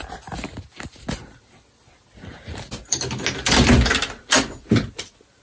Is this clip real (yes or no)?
yes